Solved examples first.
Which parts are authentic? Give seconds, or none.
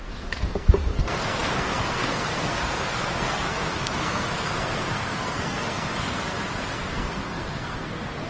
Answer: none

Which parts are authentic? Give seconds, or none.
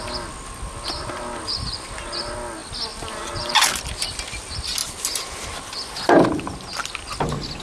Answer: 0.0-7.6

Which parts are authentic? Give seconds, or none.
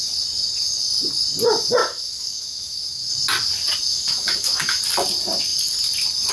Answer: 0.0-1.8; 3.1-3.9; 4.8-6.3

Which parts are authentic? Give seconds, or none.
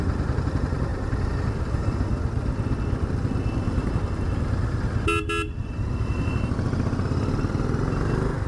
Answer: 0.0-8.5